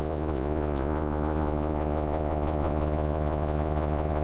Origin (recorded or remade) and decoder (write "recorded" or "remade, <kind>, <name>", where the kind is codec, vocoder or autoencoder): remade, vocoder, Vocos